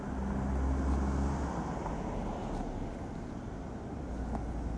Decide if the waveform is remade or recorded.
recorded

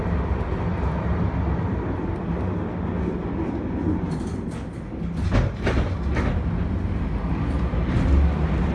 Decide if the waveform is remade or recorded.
recorded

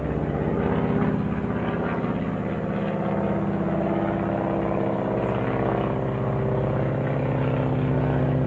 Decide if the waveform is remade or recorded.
recorded